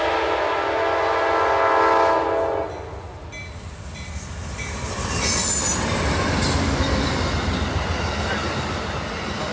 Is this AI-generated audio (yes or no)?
no